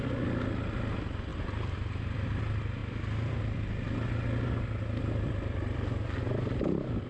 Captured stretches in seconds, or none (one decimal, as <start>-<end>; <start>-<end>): 0.0-7.1